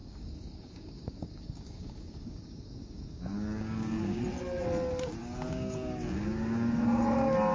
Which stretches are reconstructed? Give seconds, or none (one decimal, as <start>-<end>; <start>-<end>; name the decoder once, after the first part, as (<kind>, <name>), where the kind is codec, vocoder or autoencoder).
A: 0.0-4.2 (codec, DAC); 5.2-7.0